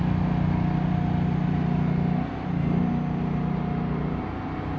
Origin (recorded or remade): recorded